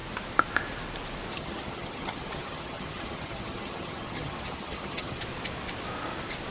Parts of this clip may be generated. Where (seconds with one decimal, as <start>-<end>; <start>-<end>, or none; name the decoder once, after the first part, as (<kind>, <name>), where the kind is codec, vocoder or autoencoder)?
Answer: 1.3-5.2 (vocoder, HiFi-GAN)